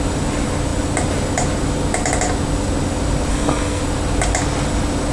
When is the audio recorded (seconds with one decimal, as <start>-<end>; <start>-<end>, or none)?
0.0-3.3; 3.8-5.1